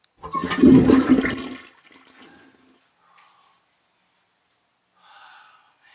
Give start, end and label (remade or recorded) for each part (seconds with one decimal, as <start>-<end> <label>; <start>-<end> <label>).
0.0-5.9 recorded